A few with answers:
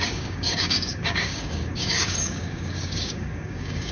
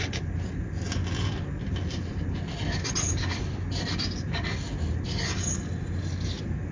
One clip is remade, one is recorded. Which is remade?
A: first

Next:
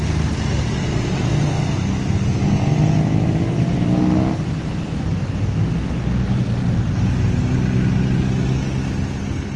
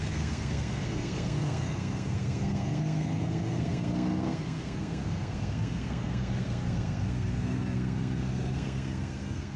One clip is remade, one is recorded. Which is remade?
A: second